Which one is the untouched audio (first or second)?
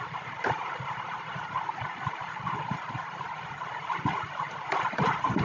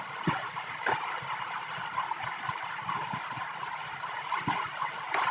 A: second